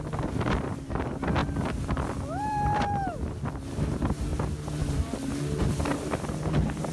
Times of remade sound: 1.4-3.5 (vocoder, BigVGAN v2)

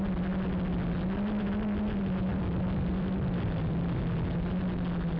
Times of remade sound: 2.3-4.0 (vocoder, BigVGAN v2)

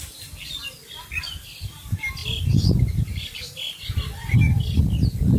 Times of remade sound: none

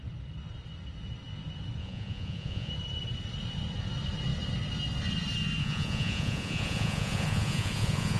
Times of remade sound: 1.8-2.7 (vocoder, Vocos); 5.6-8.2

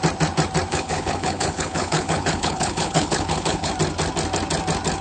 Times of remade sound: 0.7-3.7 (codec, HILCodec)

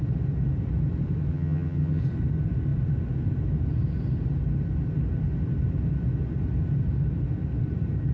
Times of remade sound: 1.3-2.0 (vocoder, HiFi-GAN)